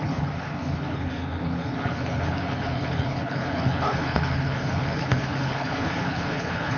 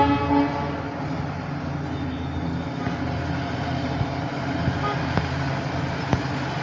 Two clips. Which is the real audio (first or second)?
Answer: second